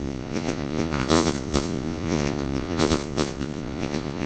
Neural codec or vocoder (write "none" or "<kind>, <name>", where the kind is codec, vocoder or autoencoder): vocoder, Vocos